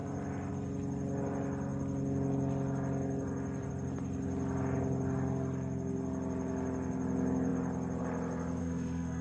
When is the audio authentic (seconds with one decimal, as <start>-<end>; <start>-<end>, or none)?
0.0-8.6